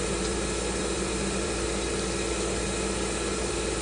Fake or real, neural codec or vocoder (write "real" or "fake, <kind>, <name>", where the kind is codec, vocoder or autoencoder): fake, vocoder, BigVGAN v2